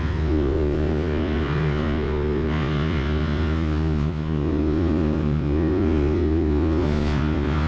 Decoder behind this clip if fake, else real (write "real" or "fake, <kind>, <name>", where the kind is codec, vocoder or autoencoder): fake, vocoder, Vocos